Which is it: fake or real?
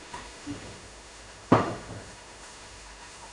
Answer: fake